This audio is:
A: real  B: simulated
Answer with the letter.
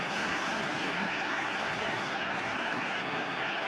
B